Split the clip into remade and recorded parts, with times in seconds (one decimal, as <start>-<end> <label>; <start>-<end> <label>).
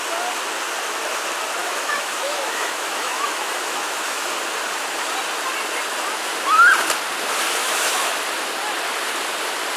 0.0-1.6 recorded; 1.6-4.3 remade; 4.3-7.6 recorded; 7.6-8.1 remade; 8.1-9.8 recorded